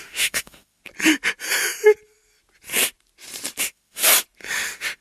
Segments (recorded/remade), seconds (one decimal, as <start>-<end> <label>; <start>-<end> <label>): 0.0-0.8 remade; 0.8-3.6 recorded; 3.6-4.0 remade; 4.0-4.5 recorded; 4.5-5.0 remade